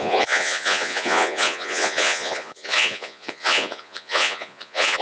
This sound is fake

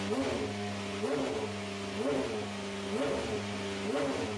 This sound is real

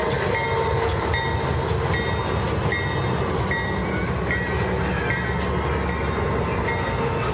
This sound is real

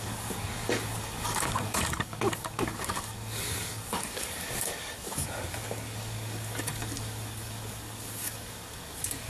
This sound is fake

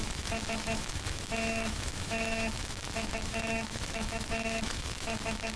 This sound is fake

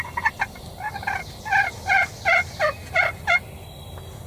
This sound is real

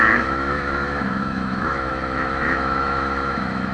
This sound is fake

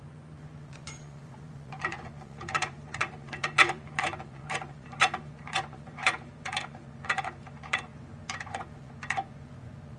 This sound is fake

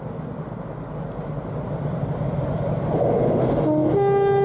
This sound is real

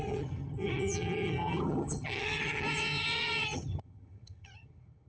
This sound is fake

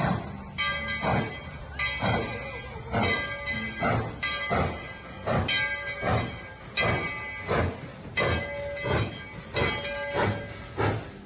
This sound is real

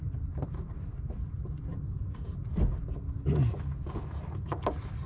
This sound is real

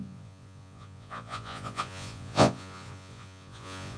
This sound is fake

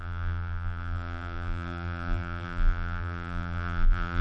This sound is fake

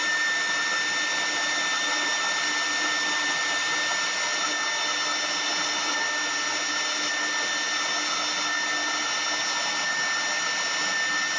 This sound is real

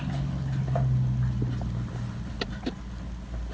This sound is real